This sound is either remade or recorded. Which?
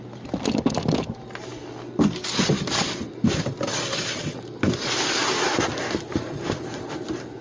recorded